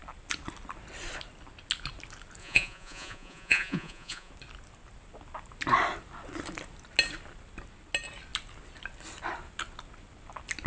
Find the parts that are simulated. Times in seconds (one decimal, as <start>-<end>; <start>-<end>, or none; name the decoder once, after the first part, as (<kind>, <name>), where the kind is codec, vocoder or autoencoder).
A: 2.4-4.3 (vocoder, Vocos)